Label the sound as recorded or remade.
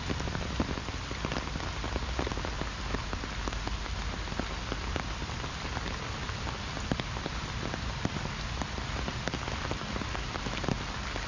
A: recorded